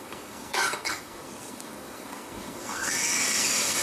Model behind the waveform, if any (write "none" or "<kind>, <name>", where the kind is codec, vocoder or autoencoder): codec, SNAC